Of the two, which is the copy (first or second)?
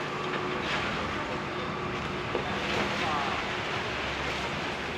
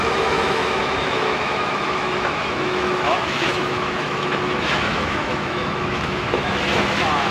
second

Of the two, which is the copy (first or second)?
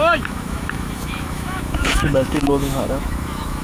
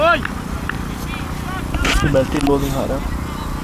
first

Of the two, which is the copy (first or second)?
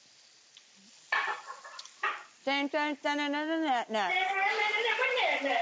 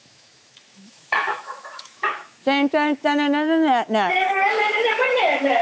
second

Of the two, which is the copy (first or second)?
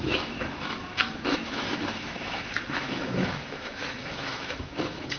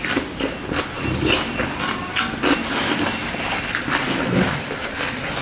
first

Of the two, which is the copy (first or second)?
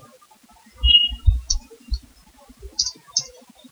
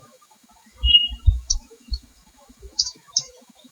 second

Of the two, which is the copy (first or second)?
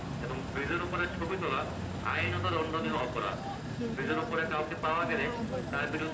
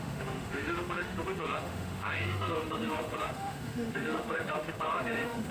second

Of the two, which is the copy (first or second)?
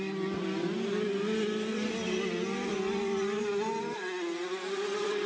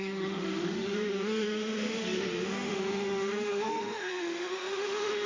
second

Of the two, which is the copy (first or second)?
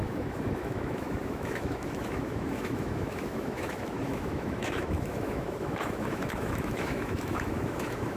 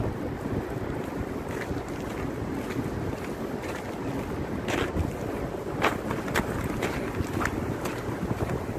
first